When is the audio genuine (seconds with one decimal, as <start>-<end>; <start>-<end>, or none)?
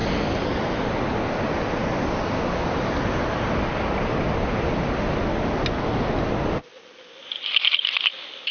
0.0-8.5